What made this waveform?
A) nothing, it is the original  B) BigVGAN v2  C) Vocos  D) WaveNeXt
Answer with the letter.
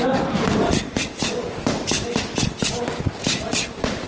A